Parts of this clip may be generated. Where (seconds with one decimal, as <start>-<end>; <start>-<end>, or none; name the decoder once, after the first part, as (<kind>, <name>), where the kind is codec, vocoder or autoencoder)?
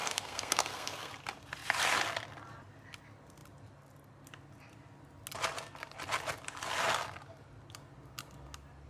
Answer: 0.0-1.1 (codec, SNAC)